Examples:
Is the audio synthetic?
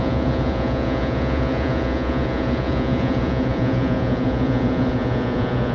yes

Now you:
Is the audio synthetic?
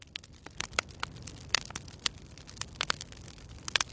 no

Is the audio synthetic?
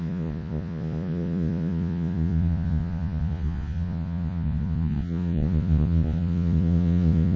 yes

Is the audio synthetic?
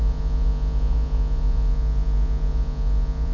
yes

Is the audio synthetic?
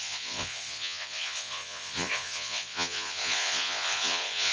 yes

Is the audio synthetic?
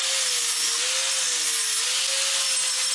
no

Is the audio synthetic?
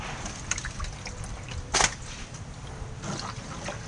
no